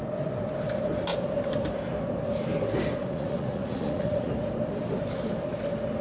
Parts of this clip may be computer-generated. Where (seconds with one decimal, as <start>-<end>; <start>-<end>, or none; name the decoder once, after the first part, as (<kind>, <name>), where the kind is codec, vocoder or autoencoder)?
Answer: 3.0-4.3 (vocoder, Vocos)